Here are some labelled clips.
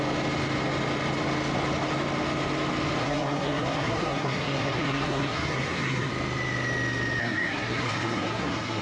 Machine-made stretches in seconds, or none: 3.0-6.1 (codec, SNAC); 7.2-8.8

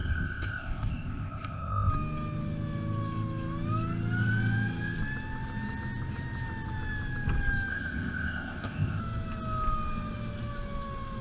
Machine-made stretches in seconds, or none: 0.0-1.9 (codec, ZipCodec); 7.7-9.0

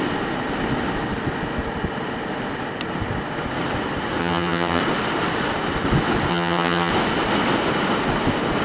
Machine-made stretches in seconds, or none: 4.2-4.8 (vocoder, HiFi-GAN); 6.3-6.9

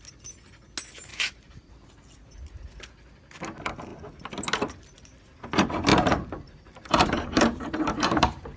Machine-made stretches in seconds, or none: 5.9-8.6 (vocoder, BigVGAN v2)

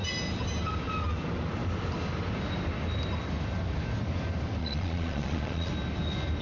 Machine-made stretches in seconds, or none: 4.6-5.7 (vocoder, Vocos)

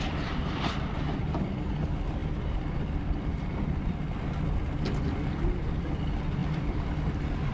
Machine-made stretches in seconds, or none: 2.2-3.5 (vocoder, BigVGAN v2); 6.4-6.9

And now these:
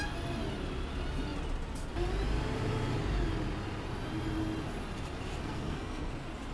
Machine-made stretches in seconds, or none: 5.4-6.1 (codec, SNAC)